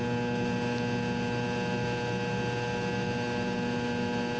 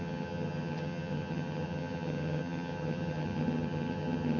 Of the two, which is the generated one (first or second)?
second